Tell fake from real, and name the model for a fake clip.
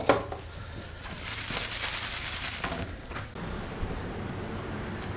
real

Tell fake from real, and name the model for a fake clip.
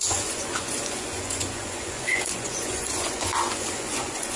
fake, vocoder, Vocos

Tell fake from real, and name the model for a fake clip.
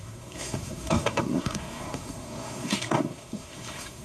fake, codec, SNAC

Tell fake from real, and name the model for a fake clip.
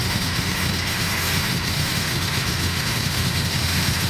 fake, autoencoder, DAC-VAE